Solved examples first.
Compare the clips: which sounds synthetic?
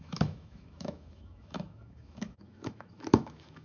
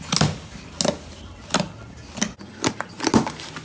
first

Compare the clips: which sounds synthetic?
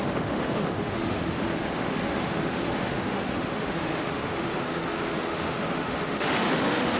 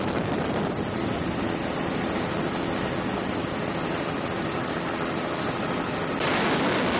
first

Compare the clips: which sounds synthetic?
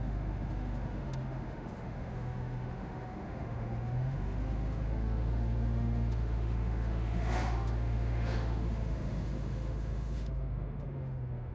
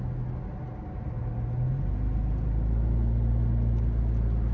first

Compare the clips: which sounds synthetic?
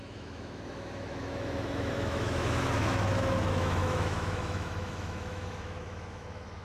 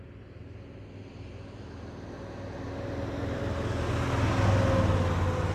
first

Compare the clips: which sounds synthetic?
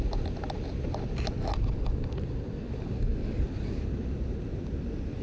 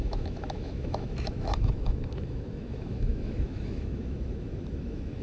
second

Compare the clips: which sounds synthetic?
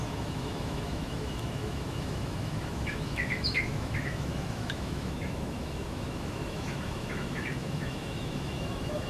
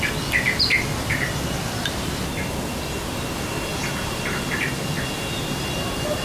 first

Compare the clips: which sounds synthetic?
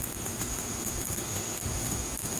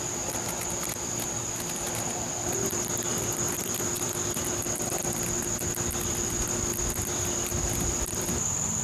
first